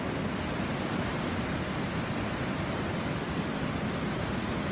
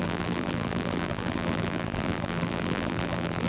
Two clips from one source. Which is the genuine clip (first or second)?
first